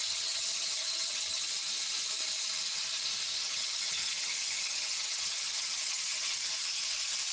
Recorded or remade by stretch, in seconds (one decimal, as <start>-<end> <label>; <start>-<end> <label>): 0.0-1.5 remade; 1.5-3.3 recorded; 3.3-6.8 remade; 6.8-7.3 recorded